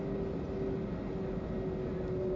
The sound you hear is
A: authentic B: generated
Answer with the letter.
A